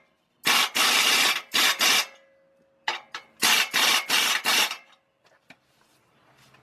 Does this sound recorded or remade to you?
recorded